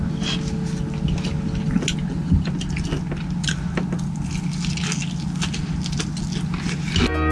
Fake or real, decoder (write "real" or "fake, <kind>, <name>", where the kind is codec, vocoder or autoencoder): real